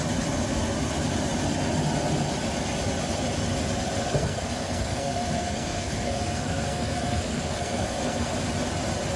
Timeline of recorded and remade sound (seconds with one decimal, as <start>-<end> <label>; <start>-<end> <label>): 0.0-4.0 recorded; 4.0-8.3 remade; 8.3-9.2 recorded